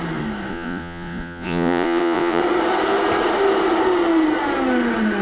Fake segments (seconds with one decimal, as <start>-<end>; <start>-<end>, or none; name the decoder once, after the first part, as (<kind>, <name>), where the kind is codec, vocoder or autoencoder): 0.5-2.4 (vocoder, Vocos)